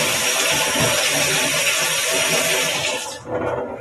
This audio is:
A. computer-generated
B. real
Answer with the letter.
B